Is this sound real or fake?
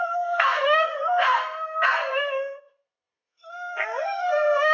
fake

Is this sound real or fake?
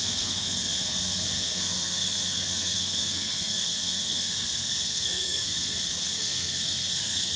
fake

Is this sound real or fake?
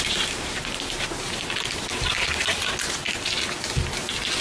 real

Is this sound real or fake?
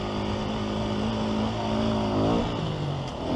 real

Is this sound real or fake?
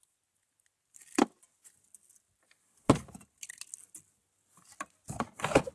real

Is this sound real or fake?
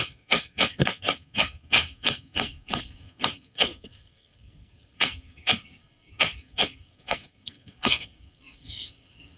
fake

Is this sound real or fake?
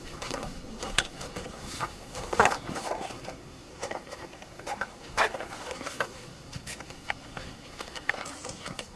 fake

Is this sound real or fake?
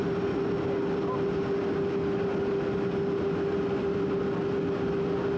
real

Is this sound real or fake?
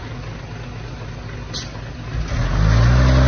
real